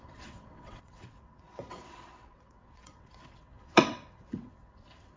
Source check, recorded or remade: remade